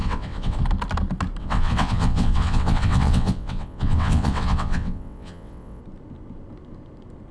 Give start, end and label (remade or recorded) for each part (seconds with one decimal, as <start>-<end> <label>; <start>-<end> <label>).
0.0-0.6 remade; 0.6-1.4 recorded; 1.4-5.8 remade; 5.8-7.3 recorded

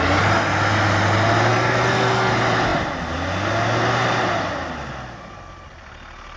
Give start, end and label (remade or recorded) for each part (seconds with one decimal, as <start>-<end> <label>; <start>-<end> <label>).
0.0-1.5 recorded; 1.5-2.3 remade; 2.3-6.4 recorded